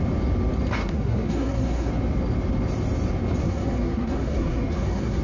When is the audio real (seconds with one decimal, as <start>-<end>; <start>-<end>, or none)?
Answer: 0.0-0.8; 1.9-3.4